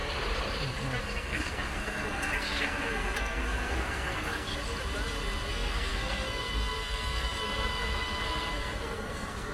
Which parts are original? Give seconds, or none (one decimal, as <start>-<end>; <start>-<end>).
0.0-1.0; 4.5-5.5